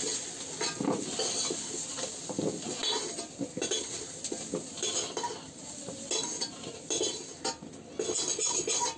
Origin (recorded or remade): recorded